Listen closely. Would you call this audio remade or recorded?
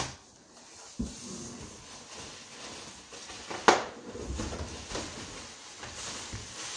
recorded